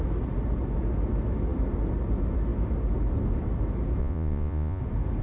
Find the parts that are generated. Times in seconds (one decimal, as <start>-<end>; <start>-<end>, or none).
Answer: 4.0-4.8